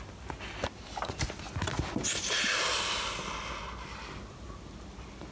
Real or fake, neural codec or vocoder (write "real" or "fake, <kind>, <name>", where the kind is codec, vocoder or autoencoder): real